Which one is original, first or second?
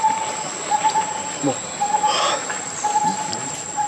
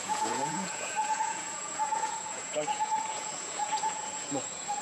first